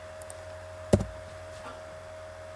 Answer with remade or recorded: recorded